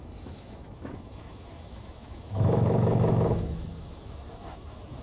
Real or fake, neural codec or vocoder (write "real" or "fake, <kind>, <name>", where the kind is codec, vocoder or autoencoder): fake, autoencoder, DAC-VAE